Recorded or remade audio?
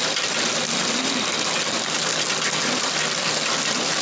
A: recorded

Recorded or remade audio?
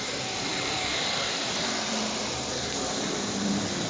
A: remade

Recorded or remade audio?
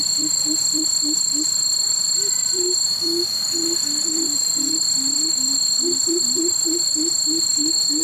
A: remade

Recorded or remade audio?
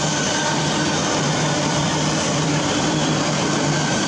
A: remade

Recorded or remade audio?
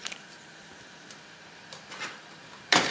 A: remade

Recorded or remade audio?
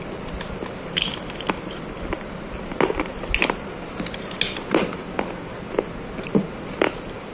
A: recorded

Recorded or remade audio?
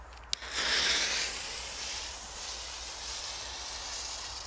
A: recorded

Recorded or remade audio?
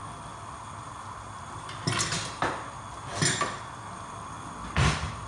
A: recorded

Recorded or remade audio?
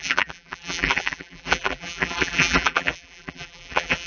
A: remade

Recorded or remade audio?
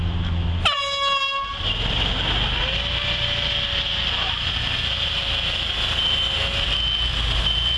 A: recorded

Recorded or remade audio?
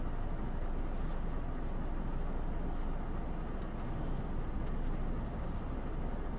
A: recorded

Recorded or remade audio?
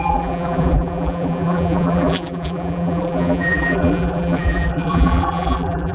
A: remade